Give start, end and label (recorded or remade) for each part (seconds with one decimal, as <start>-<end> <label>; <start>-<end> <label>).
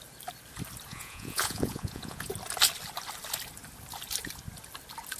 0.0-0.9 recorded; 0.9-2.3 remade; 2.3-5.2 recorded